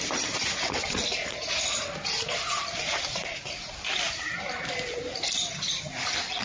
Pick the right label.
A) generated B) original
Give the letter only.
B